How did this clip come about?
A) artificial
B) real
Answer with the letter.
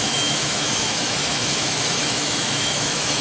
A